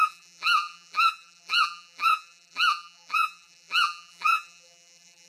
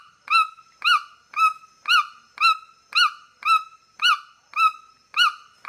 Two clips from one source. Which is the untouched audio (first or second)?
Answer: second